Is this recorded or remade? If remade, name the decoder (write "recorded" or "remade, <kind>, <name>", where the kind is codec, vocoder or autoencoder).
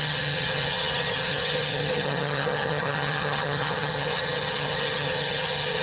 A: remade, vocoder, HiFi-GAN